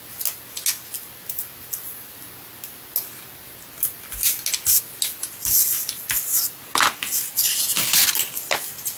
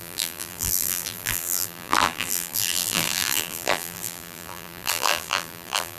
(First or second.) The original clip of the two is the first